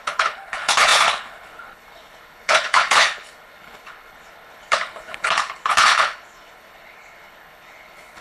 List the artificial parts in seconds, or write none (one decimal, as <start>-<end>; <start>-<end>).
0.0-8.2